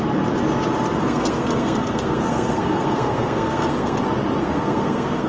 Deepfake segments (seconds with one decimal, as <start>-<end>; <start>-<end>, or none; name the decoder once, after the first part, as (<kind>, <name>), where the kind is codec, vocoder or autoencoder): 1.0-4.0 (codec, SNAC); 4.4-5.3